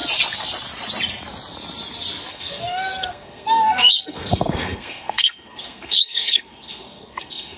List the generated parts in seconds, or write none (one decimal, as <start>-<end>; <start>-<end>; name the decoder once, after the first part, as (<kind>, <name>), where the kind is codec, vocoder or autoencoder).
2.3-7.6 (codec, SNAC)